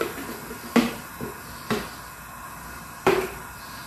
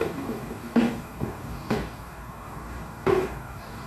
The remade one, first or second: second